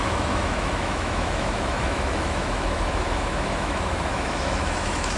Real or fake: fake